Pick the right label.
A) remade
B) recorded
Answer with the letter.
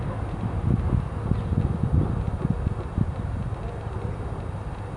B